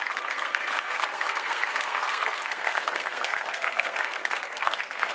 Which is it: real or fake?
fake